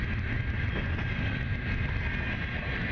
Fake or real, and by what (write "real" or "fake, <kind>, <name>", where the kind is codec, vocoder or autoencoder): real